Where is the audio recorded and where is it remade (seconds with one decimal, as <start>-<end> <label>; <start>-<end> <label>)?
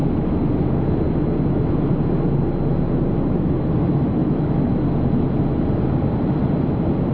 0.0-3.6 recorded; 3.6-7.1 remade